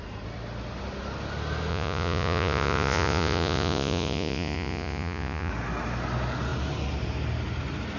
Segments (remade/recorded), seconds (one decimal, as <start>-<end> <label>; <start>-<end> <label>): 0.0-1.7 recorded; 1.7-5.5 remade; 5.5-8.0 recorded